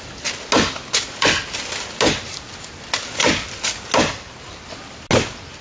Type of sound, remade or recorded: recorded